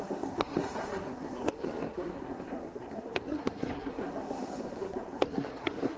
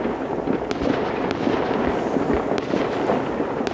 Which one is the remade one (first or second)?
first